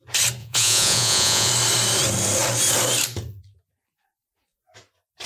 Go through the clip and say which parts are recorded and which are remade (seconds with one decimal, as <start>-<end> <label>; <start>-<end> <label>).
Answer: 0.0-0.4 recorded; 0.4-1.5 remade; 1.5-5.3 recorded